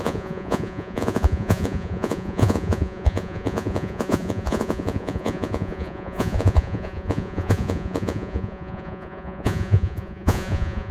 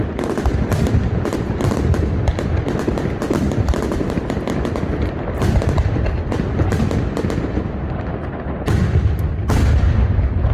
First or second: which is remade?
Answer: first